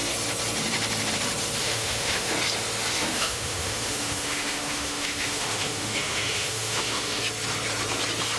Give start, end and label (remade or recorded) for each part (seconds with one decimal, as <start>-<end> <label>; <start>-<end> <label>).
0.0-1.6 recorded; 1.6-2.3 remade; 2.3-2.9 recorded; 2.9-7.2 remade; 7.2-8.4 recorded